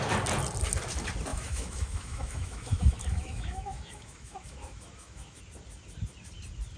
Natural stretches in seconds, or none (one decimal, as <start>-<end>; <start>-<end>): 0.0-1.3; 5.4-6.8